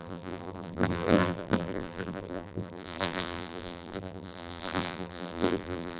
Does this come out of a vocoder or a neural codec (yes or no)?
yes